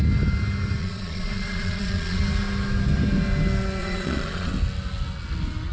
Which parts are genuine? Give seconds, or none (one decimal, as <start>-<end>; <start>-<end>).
0.0-0.8; 2.2-3.8; 4.5-5.7